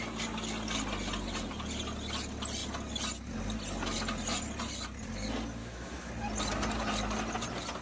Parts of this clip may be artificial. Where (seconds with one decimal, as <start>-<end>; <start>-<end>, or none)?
5.6-6.1